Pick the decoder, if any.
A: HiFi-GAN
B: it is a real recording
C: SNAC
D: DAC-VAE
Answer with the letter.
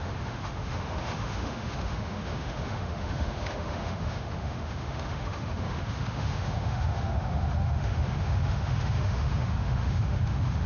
D